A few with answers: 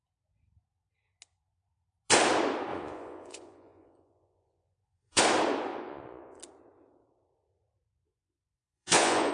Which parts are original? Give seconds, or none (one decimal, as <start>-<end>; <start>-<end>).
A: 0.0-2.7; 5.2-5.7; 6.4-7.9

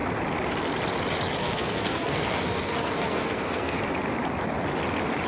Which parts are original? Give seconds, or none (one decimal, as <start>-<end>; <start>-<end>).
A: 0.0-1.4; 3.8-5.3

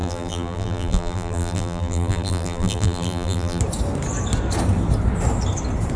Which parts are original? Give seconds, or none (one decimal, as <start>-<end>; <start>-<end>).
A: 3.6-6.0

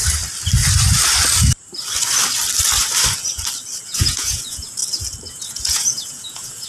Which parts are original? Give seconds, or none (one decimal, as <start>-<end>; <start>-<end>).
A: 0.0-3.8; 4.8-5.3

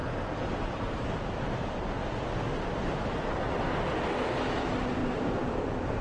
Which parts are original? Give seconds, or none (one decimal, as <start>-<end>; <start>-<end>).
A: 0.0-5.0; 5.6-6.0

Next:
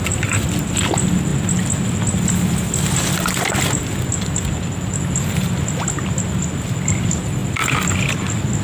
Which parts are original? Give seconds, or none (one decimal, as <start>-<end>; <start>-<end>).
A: 0.0-8.6

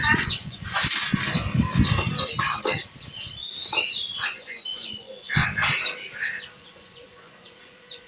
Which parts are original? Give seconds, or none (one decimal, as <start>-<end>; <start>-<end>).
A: 0.8-3.9; 5.4-6.6

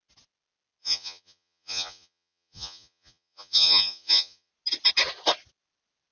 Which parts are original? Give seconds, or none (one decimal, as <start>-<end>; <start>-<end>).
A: 0.0-0.8; 4.5-6.1